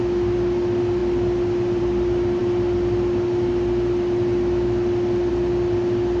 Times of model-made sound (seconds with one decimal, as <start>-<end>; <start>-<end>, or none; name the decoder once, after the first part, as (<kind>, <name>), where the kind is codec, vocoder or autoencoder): none